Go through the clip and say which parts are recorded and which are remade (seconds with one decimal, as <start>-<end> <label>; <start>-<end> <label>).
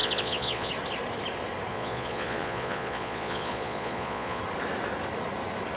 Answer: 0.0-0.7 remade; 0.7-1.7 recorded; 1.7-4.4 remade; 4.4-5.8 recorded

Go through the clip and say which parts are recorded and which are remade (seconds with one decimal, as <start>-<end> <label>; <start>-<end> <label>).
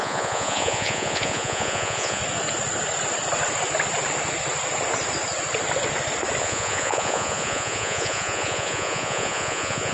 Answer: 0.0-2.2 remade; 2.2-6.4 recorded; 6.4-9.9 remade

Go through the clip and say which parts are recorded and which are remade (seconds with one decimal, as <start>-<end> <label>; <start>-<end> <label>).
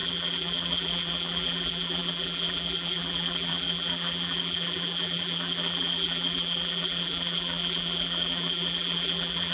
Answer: 0.0-9.5 remade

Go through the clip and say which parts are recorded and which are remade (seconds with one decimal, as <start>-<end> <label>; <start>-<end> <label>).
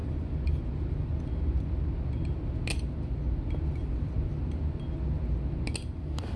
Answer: 0.0-6.4 recorded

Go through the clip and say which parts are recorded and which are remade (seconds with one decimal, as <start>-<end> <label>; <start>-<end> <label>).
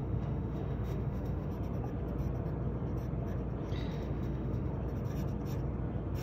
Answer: 0.0-1.5 remade; 1.5-3.9 recorded; 3.9-4.7 remade; 4.7-6.2 recorded